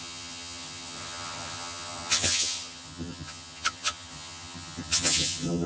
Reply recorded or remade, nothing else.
remade